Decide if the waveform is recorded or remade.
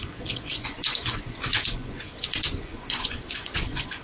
remade